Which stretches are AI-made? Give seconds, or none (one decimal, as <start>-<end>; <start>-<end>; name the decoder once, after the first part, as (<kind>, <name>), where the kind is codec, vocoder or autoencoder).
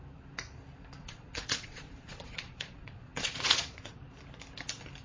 1.0-4.0 (vocoder, Vocos)